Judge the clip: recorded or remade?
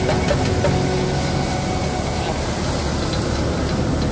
recorded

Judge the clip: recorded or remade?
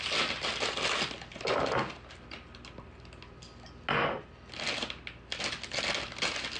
recorded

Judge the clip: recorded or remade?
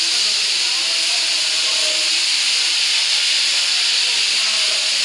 remade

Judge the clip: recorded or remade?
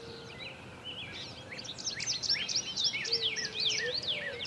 recorded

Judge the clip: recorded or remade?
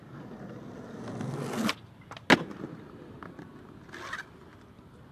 recorded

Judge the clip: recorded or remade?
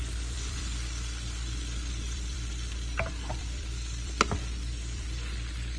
remade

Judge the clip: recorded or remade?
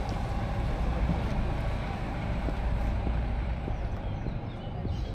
remade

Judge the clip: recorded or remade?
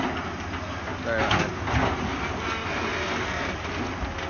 recorded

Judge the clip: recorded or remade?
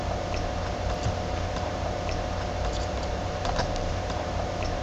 remade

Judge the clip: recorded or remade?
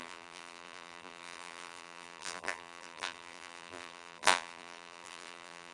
remade